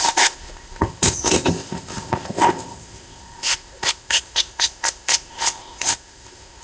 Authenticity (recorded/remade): remade